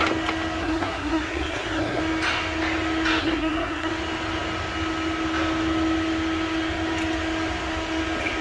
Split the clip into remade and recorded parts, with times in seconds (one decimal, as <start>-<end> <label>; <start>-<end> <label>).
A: 0.0-0.6 recorded; 0.6-2.0 remade; 2.0-3.2 recorded; 3.2-3.9 remade; 3.9-8.4 recorded